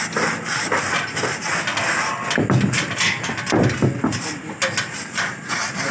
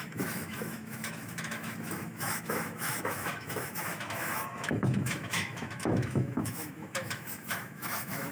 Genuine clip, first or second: first